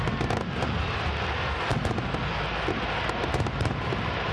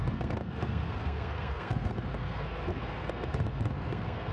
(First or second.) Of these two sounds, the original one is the first